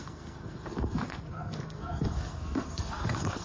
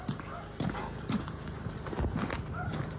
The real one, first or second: second